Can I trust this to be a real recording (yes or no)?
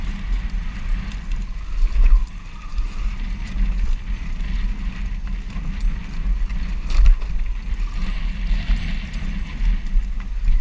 yes